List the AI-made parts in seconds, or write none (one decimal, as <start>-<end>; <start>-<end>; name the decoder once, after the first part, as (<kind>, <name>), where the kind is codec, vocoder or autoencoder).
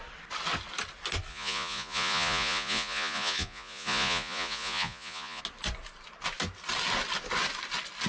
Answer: 1.3-5.4 (vocoder, Vocos)